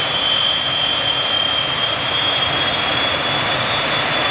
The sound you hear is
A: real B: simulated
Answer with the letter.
A